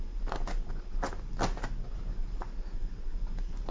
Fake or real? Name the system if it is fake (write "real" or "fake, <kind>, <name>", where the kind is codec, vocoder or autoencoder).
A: real